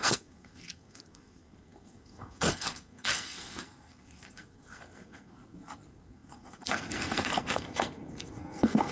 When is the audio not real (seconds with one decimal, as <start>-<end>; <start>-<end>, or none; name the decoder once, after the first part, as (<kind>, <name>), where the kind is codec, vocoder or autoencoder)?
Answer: 0.0-8.9 (codec, SNAC)